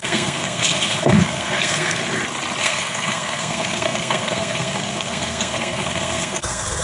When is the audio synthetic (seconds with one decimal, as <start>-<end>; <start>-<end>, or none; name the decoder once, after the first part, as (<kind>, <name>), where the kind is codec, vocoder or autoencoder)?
0.0-2.0 (codec, SNAC); 2.6-6.8